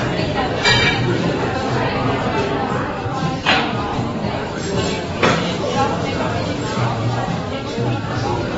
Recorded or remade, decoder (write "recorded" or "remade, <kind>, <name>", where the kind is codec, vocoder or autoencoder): remade, vocoder, BigVGAN v2